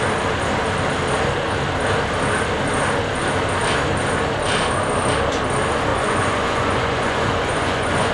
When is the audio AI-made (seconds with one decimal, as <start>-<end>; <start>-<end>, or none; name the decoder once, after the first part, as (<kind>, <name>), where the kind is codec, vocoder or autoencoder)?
5.9-8.1 (vocoder, Vocos)